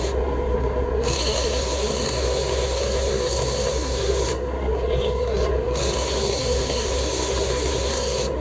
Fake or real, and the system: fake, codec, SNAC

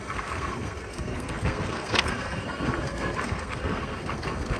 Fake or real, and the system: fake, codec, SNAC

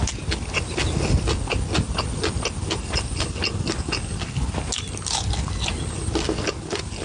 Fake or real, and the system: real